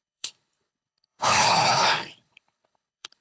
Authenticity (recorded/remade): remade